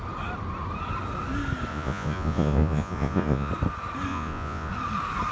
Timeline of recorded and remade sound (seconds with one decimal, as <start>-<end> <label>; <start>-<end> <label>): 0.0-1.7 recorded; 1.7-3.5 remade; 3.5-4.1 recorded; 4.1-4.7 remade; 4.7-5.3 recorded

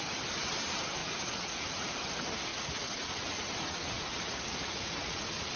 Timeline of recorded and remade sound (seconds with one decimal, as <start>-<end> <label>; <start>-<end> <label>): 0.0-1.0 recorded; 1.0-2.0 remade; 2.0-2.5 recorded; 2.5-5.6 remade

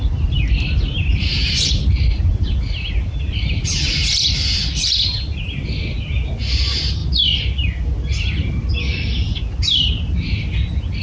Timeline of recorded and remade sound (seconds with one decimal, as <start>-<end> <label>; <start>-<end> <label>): 0.0-11.0 recorded

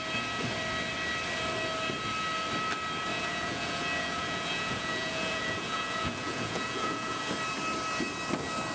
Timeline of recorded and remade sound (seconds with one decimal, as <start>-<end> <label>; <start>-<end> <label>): 0.0-3.1 recorded; 3.1-7.2 remade; 7.2-8.7 recorded